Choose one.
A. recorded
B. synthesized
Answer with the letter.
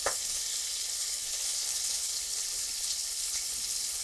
B